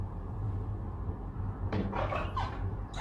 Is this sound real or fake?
fake